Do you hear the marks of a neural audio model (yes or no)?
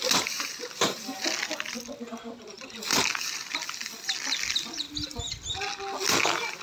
no